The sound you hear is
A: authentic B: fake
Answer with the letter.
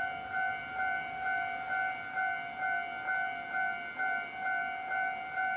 A